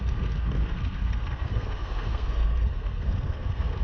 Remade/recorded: remade